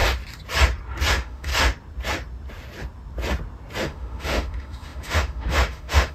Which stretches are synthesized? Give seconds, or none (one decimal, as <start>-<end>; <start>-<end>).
1.1-1.5; 3.8-6.1